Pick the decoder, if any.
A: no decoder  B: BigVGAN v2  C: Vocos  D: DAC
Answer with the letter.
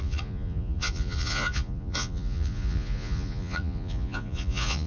C